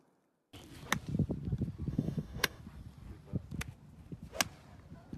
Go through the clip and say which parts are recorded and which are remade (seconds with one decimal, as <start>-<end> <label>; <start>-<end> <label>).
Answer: 0.0-1.9 recorded; 1.9-2.6 remade; 2.6-5.2 recorded